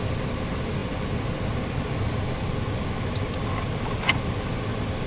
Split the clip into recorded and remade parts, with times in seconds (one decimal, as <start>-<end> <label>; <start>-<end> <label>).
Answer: 0.0-5.1 recorded